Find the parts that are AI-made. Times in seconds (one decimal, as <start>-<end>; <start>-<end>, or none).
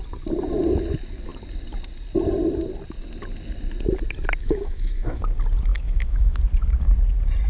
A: 4.4-5.2; 5.7-6.4